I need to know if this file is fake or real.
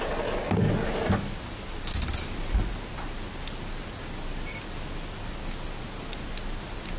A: real